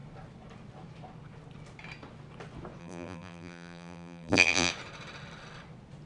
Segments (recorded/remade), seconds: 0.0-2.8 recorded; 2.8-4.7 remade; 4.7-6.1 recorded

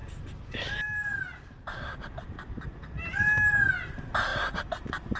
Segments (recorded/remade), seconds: 0.0-5.2 recorded

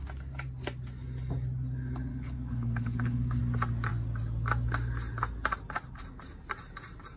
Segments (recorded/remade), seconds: 0.0-2.1 recorded; 2.1-3.4 remade; 3.4-7.2 recorded

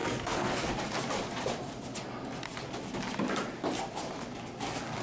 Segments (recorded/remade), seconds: 0.0-0.7 remade; 0.7-5.0 recorded

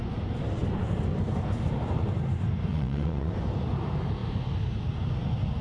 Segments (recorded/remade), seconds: 0.0-2.7 recorded; 2.7-3.3 remade; 3.3-5.6 recorded